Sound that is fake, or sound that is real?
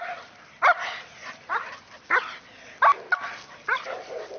fake